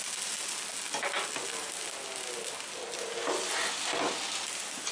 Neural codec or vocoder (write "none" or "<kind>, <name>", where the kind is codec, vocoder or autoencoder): none